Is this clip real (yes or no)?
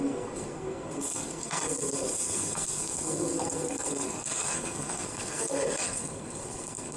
no